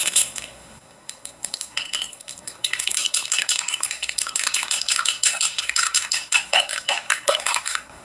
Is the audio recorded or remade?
remade